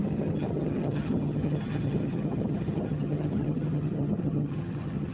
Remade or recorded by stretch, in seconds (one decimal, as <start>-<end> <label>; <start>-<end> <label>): 0.0-5.1 remade